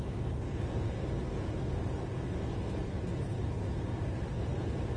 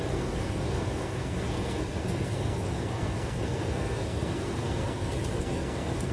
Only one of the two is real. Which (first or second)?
first